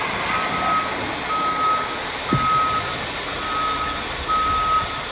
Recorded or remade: recorded